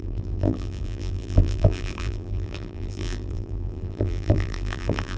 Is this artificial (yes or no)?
yes